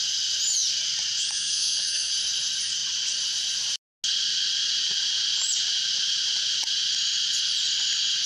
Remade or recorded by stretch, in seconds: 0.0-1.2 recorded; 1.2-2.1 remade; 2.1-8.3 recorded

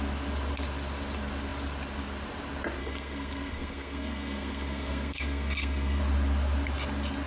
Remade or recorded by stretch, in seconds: 0.0-2.8 recorded; 2.8-6.0 remade; 6.0-7.3 recorded

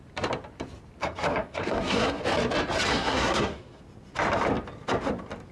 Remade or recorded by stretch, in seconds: 0.0-1.0 recorded; 1.0-2.2 remade; 2.2-2.9 recorded; 2.9-3.8 remade; 3.8-5.5 recorded

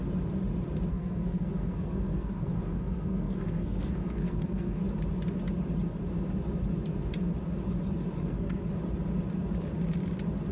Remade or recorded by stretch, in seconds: 0.0-0.9 recorded; 0.9-4.8 remade; 4.8-8.2 recorded; 8.2-8.7 remade; 8.7-10.5 recorded

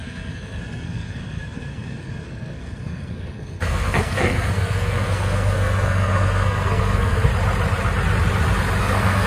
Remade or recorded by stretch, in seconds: 0.0-7.3 remade; 7.3-8.8 recorded; 8.8-9.3 remade